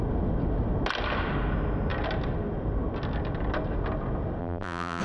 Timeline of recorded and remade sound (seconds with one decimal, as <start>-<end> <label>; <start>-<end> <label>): 0.0-4.4 recorded; 4.4-5.0 remade